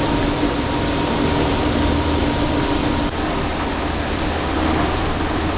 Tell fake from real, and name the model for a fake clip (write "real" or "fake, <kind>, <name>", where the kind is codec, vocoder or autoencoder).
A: fake, vocoder, BigVGAN v2